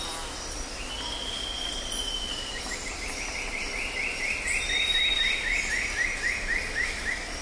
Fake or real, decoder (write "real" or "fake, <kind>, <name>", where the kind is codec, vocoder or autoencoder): real